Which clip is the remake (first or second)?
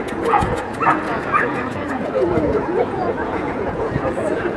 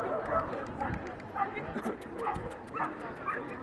first